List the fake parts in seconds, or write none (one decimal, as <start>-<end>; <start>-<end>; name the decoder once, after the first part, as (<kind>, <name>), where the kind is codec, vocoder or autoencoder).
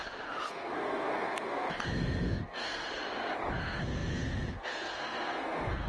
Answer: 0.5-2.9 (codec, SNAC); 3.6-5.9